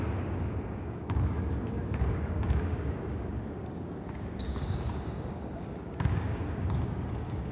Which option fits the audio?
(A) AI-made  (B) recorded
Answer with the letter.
A